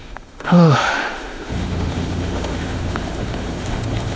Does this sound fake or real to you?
fake